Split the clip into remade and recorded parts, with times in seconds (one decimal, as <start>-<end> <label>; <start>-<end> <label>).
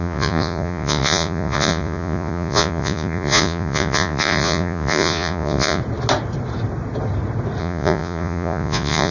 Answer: 0.0-5.8 remade; 5.8-7.6 recorded; 7.6-9.1 remade